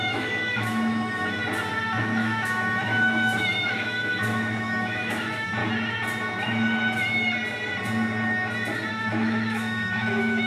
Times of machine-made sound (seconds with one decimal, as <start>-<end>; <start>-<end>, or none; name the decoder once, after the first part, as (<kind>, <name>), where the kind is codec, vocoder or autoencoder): 0.0-1.4 (autoencoder, DAC-VAE); 2.0-5.6; 8.9-10.5